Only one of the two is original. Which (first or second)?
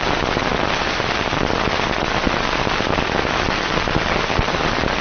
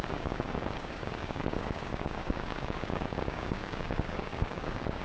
first